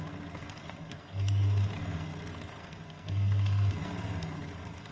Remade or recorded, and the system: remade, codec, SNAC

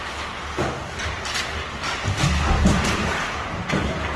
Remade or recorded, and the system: recorded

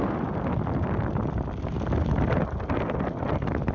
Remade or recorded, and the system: recorded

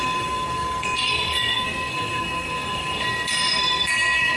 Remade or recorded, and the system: remade, codec, SNAC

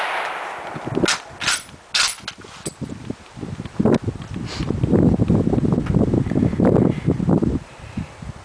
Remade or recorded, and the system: recorded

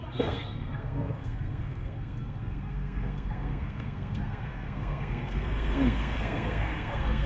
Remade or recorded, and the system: remade, codec, SNAC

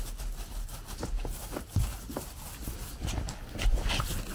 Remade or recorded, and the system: recorded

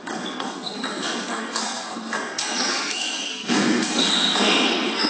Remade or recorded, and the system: remade, codec, SNAC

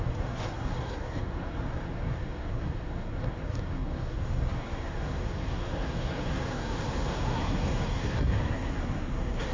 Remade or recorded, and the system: remade, codec, SNAC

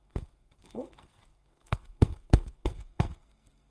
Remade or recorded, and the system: remade, codec, SNAC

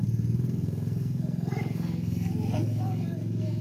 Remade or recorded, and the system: remade, codec, SNAC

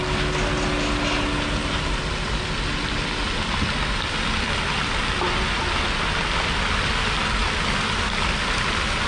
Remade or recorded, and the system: recorded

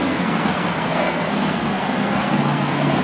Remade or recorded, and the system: remade, codec, SNAC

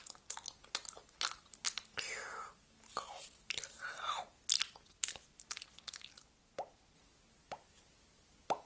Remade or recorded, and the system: recorded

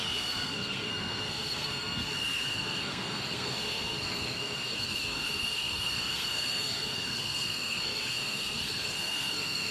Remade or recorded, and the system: remade, codec, SNAC